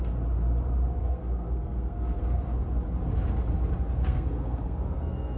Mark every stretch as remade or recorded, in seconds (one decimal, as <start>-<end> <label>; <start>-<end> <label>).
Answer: 0.0-1.0 recorded; 1.0-2.2 remade; 2.2-4.0 recorded; 4.0-5.4 remade